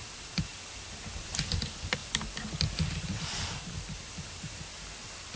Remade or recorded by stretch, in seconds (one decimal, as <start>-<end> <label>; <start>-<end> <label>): 0.0-5.4 recorded